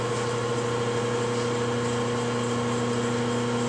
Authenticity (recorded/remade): recorded